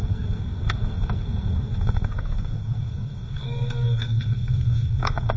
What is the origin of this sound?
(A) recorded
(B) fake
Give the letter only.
B